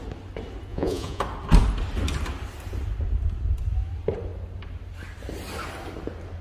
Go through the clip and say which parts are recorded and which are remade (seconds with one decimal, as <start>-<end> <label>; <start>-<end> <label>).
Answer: 0.0-0.7 recorded; 0.7-1.2 remade; 1.2-6.4 recorded